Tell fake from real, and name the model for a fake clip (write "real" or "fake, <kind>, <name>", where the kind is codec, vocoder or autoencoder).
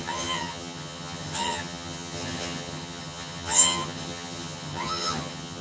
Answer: fake, vocoder, HiFi-GAN